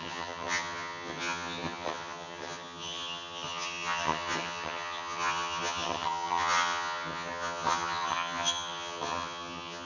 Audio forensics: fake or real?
fake